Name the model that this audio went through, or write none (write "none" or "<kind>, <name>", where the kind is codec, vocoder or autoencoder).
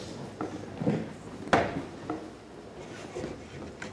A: none